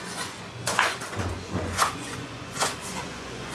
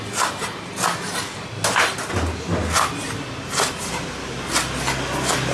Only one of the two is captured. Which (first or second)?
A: second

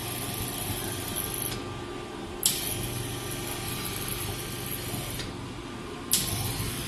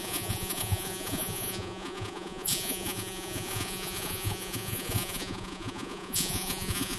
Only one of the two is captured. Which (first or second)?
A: first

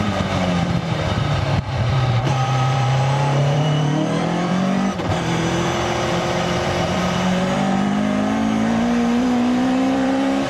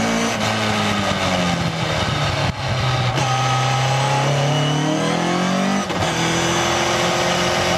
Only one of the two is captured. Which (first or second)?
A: second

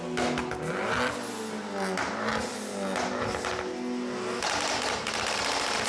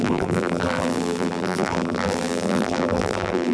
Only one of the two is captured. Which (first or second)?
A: first